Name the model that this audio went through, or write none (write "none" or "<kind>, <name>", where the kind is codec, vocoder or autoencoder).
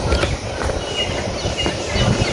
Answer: none